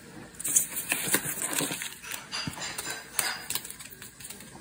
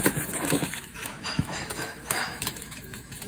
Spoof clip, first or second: second